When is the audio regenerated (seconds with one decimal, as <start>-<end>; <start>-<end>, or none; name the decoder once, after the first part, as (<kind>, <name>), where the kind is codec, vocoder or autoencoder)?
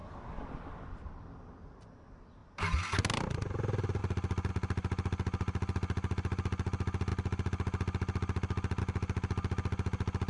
none